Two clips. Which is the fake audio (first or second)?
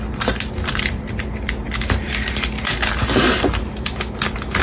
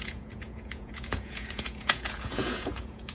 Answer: second